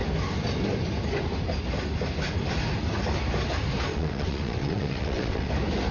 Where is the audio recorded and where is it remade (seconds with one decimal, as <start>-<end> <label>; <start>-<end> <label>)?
0.0-3.9 recorded; 3.9-5.5 remade; 5.5-5.9 recorded